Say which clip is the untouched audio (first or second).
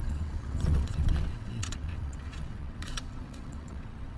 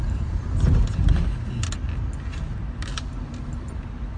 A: second